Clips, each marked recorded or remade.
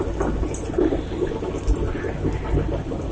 recorded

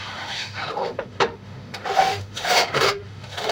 remade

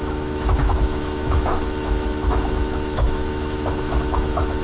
remade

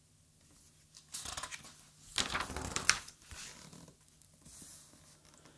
recorded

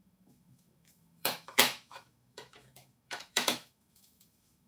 remade